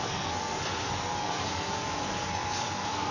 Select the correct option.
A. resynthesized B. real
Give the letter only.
A